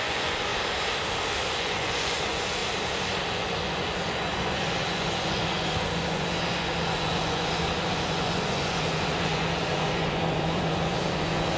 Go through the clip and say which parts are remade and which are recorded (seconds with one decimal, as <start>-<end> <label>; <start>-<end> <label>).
0.0-0.5 remade; 0.5-1.6 recorded; 1.6-2.6 remade; 2.6-3.3 recorded; 3.3-11.6 remade